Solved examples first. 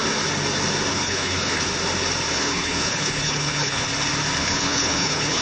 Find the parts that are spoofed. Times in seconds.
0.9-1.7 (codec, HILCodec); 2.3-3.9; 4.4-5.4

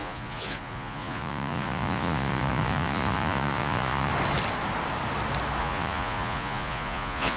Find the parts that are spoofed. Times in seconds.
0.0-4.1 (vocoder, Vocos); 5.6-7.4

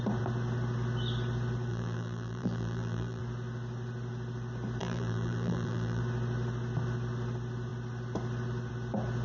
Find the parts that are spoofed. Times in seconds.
1.7-3.2 (vocoder, BigVGAN v2); 4.8-6.0

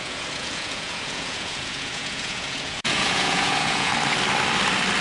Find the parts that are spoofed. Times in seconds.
0.0-3.9 (vocoder, Vocos)

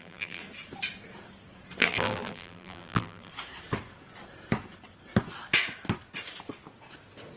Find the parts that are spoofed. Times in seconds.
0.0-0.4 (vocoder, BigVGAN v2); 1.8-3.3

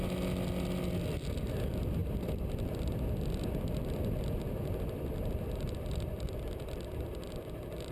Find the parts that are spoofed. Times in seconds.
none

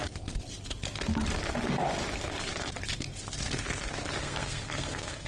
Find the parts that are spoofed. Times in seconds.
4.2-5.3 (codec, SNAC)